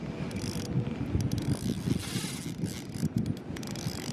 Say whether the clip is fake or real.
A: real